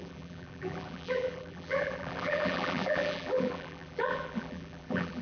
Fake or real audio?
fake